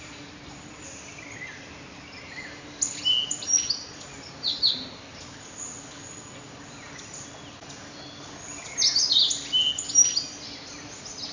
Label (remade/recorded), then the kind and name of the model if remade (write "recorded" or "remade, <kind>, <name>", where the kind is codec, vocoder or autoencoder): recorded